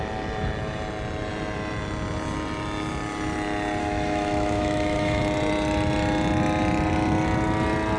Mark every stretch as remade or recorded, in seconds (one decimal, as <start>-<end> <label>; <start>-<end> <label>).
0.0-3.8 recorded; 3.8-5.2 remade; 5.2-8.0 recorded